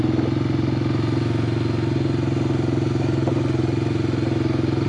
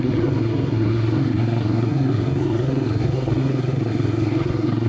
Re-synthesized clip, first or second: second